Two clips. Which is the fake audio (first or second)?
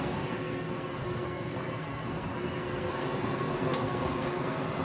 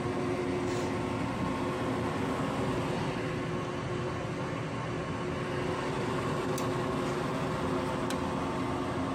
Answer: first